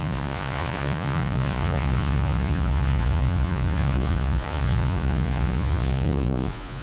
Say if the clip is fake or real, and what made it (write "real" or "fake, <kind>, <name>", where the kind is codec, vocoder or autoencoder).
fake, vocoder, Vocos